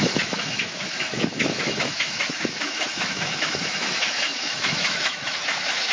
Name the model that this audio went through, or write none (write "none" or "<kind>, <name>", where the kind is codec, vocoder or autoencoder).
autoencoder, DAC-VAE